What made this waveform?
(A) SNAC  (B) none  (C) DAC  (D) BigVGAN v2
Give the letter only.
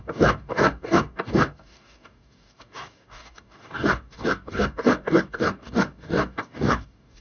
C